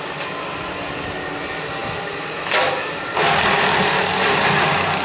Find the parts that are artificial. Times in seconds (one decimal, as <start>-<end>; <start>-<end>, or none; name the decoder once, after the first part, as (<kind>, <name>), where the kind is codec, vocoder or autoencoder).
none